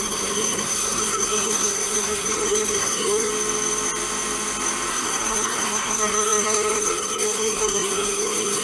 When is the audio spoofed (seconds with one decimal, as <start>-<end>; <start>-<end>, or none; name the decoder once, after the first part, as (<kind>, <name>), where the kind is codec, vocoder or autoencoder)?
0.0-3.3 (codec, SNAC); 4.9-8.6